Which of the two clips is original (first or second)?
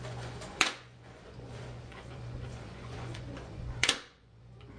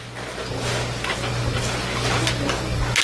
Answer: second